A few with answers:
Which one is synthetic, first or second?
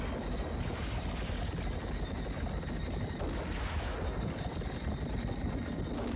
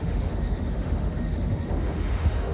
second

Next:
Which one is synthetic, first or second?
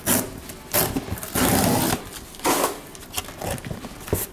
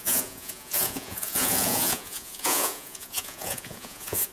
second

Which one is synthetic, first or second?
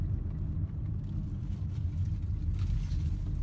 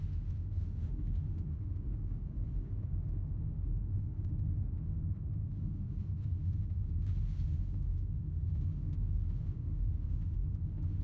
second